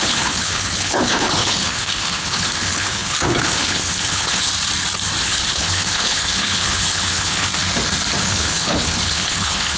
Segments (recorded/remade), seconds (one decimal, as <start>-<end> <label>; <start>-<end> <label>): 0.0-4.5 remade; 4.5-5.2 recorded; 5.2-7.5 remade; 7.5-8.2 recorded; 8.2-9.8 remade